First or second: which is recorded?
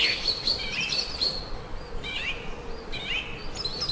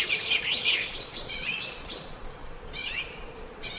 first